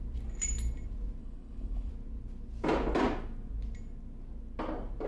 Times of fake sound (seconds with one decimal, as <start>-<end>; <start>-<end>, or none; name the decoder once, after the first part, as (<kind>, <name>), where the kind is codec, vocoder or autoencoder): 1.2-1.9 (codec, HILCodec)